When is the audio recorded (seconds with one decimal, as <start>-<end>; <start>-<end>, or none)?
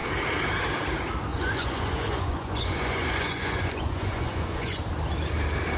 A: 0.0-1.3; 4.8-5.8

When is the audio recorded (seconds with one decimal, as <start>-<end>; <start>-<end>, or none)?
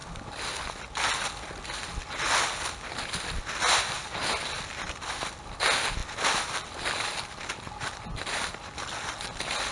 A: 0.0-9.7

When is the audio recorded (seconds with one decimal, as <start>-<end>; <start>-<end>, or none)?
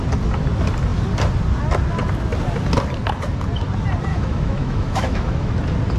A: 0.0-4.1; 5.5-6.0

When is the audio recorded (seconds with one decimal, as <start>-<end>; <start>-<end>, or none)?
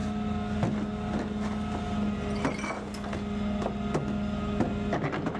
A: 0.0-5.4